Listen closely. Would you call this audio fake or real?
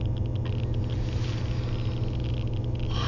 real